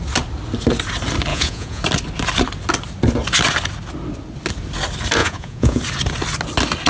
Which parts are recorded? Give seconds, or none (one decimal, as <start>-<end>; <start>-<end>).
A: 0.0-1.3; 1.8-5.2; 5.8-6.9